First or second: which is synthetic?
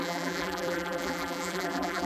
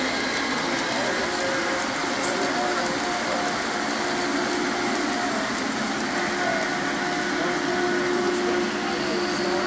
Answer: first